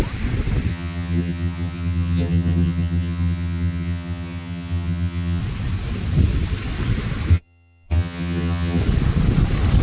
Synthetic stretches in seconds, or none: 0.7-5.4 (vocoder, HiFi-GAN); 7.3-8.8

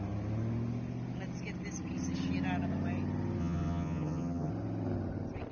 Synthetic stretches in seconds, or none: 3.4-4.5 (vocoder, HiFi-GAN)